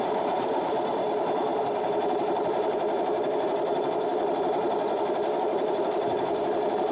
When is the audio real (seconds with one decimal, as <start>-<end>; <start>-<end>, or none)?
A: none